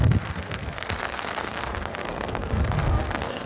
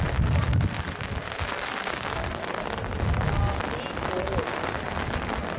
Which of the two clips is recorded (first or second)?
second